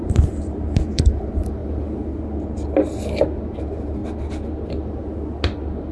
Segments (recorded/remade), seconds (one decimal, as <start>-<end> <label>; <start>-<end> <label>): 0.0-1.6 remade; 1.6-3.6 recorded; 3.6-4.0 remade; 4.0-5.9 recorded